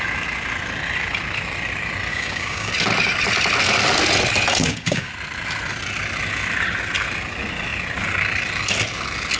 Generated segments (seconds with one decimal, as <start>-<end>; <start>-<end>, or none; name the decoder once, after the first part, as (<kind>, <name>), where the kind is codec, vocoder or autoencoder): 2.1-2.7 (codec, DAC); 4.6-5.1